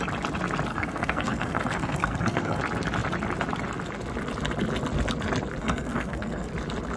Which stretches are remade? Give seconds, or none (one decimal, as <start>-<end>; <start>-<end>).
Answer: 0.7-2.6; 5.6-6.5